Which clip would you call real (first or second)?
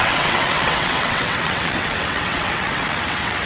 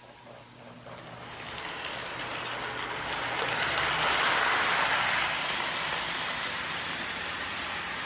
second